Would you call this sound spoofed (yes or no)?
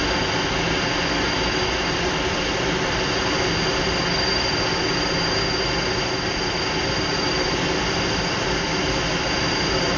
no